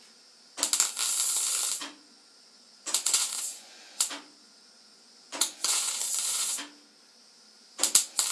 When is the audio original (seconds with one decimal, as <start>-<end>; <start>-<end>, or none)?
0.0-1.8; 6.6-8.3